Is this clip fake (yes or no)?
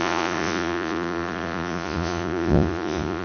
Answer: yes